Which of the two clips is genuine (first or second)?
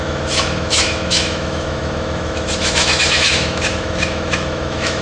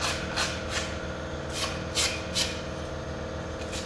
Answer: second